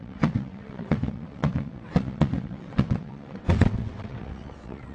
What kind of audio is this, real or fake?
fake